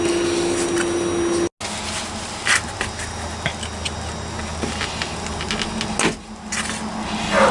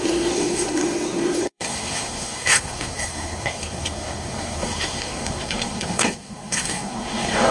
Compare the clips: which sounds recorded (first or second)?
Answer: first